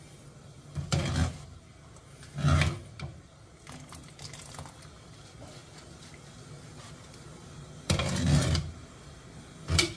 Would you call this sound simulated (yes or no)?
no